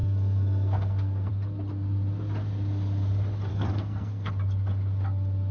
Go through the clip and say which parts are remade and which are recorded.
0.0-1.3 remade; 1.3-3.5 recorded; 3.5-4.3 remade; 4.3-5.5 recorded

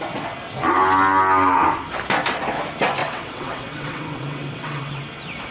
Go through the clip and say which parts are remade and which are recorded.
0.0-3.0 recorded; 3.0-5.0 remade; 5.0-5.5 recorded

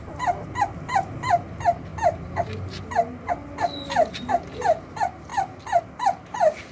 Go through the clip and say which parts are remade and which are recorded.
0.0-6.7 recorded

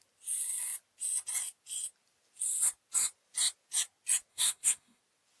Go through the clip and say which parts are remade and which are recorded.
0.0-4.3 recorded; 4.3-5.0 remade; 5.0-5.4 recorded

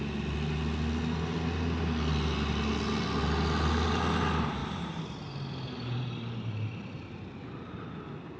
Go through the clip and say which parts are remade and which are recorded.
0.0-4.6 recorded; 4.6-8.0 remade; 8.0-8.4 recorded

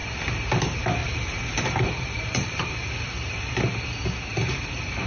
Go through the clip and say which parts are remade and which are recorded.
0.0-1.0 recorded; 1.0-3.5 remade; 3.5-4.3 recorded; 4.3-5.1 remade